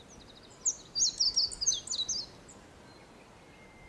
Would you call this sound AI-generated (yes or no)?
no